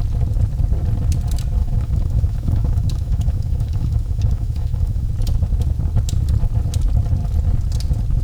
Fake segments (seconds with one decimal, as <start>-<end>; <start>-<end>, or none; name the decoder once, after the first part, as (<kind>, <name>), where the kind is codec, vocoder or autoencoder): 1.6-5.1 (autoencoder, DAC-VAE)